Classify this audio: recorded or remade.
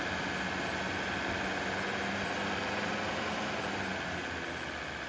recorded